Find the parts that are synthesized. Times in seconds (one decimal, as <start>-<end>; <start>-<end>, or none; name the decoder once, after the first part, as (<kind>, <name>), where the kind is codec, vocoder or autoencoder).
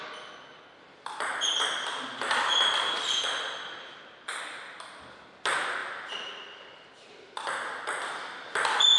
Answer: none